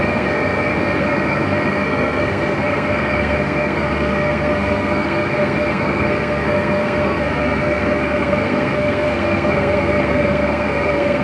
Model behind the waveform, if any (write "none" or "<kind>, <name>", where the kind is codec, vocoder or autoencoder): codec, SNAC